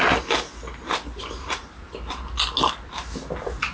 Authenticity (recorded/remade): recorded